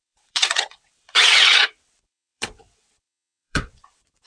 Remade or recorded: remade